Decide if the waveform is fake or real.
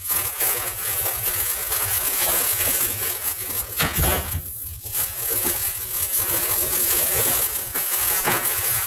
fake